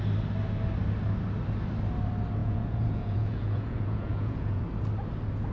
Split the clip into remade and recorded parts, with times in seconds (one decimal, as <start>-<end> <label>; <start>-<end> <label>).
0.0-2.4 recorded; 2.4-4.6 remade; 4.6-5.5 recorded